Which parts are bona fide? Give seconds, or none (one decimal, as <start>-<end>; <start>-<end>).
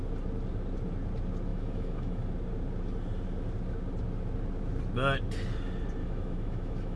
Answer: 0.0-1.5; 2.3-6.0